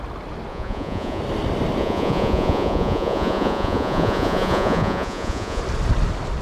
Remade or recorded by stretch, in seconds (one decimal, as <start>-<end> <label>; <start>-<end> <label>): 0.0-0.5 recorded; 0.5-1.2 remade; 1.2-1.8 recorded; 1.8-5.6 remade; 5.6-6.4 recorded